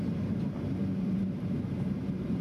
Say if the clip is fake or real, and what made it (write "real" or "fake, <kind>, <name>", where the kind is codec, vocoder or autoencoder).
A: fake, vocoder, BigVGAN v2